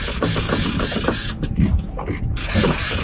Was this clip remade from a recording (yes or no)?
yes